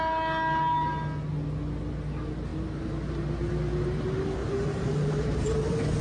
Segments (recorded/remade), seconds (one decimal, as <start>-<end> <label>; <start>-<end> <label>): 0.0-4.4 recorded; 4.4-5.6 remade; 5.6-6.0 recorded